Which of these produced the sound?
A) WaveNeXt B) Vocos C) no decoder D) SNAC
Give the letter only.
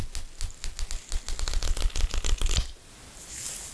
C